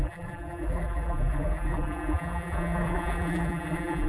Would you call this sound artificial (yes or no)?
yes